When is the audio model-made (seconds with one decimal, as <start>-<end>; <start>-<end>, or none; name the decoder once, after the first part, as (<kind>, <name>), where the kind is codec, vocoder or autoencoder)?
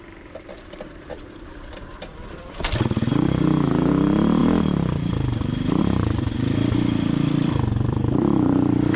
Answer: 0.0-1.9 (vocoder, BigVGAN v2); 3.9-4.4; 5.8-9.0